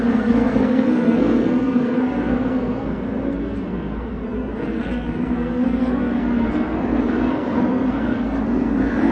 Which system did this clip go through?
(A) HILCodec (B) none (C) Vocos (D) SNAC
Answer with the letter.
D